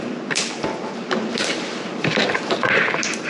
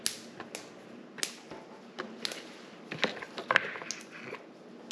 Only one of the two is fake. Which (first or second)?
first